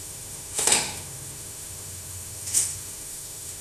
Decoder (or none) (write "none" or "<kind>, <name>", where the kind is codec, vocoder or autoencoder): autoencoder, DAC-VAE